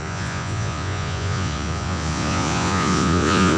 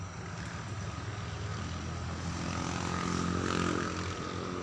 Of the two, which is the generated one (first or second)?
first